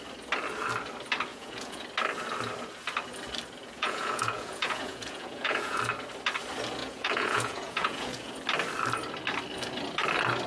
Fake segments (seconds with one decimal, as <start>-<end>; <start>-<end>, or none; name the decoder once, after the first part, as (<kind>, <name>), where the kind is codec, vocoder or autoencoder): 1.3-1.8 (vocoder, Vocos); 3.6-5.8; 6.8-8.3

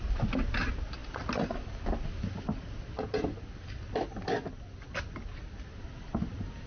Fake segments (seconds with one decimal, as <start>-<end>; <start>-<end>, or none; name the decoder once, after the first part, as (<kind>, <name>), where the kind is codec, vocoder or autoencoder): none

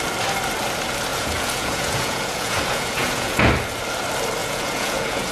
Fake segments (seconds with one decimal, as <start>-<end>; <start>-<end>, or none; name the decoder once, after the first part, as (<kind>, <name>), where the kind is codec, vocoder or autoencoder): 1.1-3.5 (vocoder, Vocos); 4.4-5.3

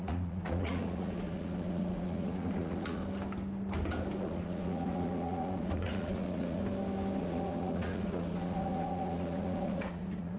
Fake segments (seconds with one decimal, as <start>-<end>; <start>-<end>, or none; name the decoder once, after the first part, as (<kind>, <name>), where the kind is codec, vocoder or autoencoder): 0.0-3.0 (vocoder, Vocos); 4.2-6.6; 7.2-10.4

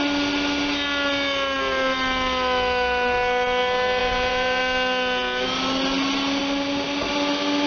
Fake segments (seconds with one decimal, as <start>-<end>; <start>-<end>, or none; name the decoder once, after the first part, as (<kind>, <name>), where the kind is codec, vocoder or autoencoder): 4.0-4.6 (vocoder, Vocos)

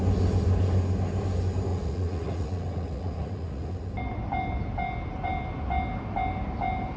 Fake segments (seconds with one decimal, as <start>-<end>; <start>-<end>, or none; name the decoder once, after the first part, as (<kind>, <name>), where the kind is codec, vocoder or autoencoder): 1.7-3.9 (vocoder, Vocos)

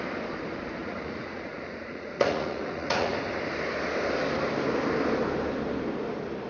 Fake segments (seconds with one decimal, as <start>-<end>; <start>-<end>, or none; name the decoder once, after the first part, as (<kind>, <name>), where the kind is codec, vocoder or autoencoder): 0.8-3.1 (vocoder, Vocos)